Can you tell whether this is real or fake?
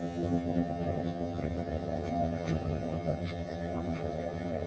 fake